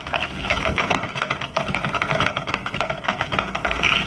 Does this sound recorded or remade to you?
remade